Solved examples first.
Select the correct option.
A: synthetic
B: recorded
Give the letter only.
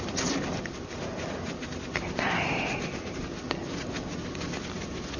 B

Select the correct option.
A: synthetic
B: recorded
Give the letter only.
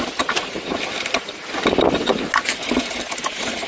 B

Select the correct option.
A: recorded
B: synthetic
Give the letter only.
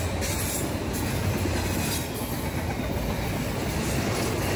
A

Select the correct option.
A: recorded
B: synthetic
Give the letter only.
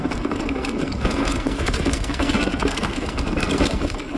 B